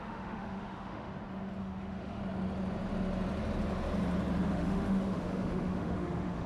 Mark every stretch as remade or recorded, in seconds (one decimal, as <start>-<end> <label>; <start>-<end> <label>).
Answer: 0.0-1.1 remade; 1.1-1.6 recorded; 1.6-2.2 remade; 2.2-4.4 recorded; 4.4-6.5 remade